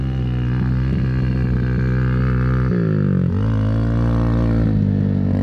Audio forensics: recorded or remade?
recorded